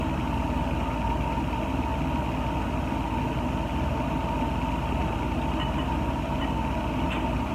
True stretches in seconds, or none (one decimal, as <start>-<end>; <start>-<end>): 0.0-7.5